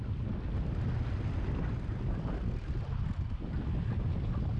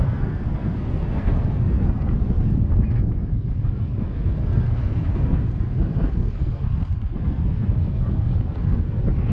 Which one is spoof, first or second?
second